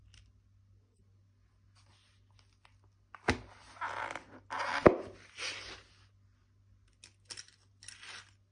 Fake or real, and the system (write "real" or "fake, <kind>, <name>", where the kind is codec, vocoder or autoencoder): real